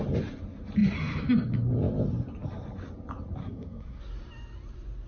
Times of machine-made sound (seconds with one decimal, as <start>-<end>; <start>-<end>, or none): 3.4-4.0